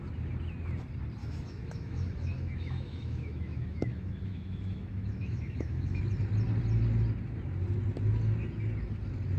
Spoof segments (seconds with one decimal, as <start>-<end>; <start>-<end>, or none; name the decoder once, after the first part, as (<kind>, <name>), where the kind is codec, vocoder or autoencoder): 1.2-6.0 (autoencoder, DAC-VAE)